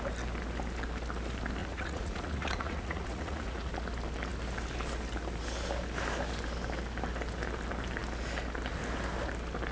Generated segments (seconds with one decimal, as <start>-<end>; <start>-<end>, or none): 1.6-3.7